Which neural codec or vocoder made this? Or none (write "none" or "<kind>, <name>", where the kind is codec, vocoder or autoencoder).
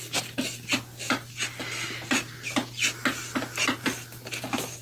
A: none